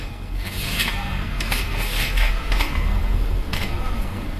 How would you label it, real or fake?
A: fake